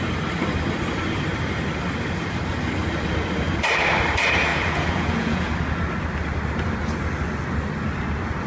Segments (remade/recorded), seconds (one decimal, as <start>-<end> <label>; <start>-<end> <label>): 0.0-4.5 recorded; 4.5-5.5 remade; 5.5-8.5 recorded